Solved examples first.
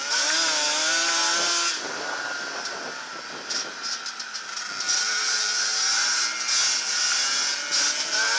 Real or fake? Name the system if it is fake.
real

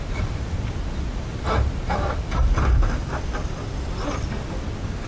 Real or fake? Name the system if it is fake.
real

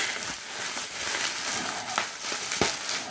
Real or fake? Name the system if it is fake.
real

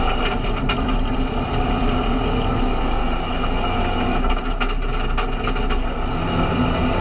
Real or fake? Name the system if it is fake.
real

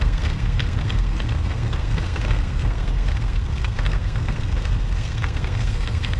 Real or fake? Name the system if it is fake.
fake, codec, SNAC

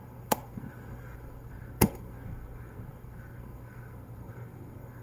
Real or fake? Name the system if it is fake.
fake, codec, SNAC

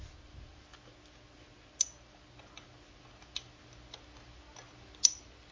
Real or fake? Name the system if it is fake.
real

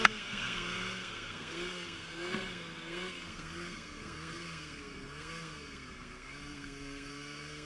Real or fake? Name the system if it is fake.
fake, codec, SNAC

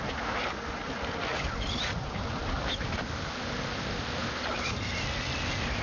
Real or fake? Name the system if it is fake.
real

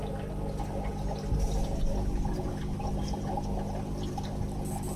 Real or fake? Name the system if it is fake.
real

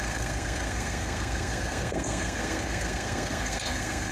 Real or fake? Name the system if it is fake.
fake, codec, SNAC